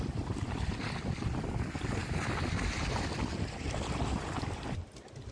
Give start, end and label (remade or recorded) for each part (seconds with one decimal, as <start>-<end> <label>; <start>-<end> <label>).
0.0-5.3 recorded